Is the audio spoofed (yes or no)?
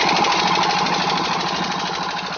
no